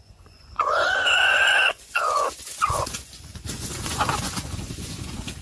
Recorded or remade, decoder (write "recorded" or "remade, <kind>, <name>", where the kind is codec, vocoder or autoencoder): remade, vocoder, Vocos